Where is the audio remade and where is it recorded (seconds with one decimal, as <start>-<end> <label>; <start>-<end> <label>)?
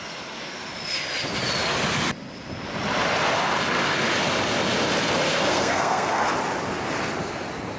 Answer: 0.0-5.3 recorded; 5.3-6.3 remade; 6.3-7.8 recorded